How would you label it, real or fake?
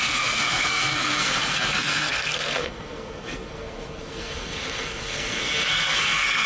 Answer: fake